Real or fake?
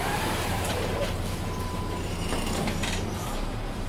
fake